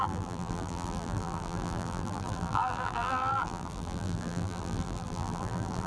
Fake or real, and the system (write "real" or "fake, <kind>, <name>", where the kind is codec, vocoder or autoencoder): fake, vocoder, BigVGAN v2